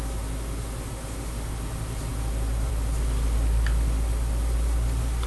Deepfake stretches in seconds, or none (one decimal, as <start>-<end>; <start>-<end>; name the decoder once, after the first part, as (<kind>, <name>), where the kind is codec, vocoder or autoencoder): none